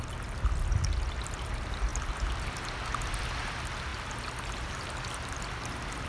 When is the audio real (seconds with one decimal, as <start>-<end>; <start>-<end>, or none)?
0.0-6.1